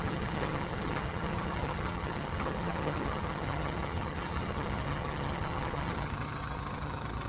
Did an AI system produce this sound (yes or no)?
yes